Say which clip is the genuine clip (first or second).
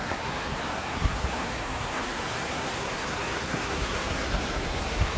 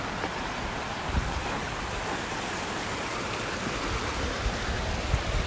second